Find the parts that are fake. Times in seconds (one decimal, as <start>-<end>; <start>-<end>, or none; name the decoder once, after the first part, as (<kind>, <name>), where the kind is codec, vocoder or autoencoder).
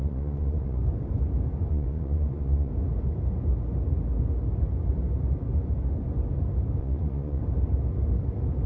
0.0-0.8 (vocoder, Vocos); 1.7-2.7; 6.8-7.4